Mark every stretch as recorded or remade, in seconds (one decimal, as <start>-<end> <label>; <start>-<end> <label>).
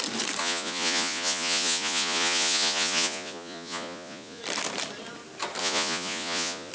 0.0-0.4 recorded; 0.4-4.4 remade; 4.4-5.6 recorded; 5.6-6.7 remade